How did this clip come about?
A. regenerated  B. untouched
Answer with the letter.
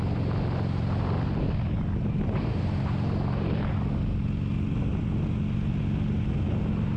B